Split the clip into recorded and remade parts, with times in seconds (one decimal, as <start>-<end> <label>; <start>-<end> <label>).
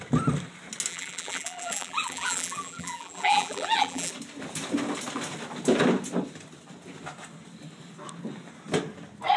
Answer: 0.0-0.9 recorded; 0.9-4.1 remade; 4.1-9.4 recorded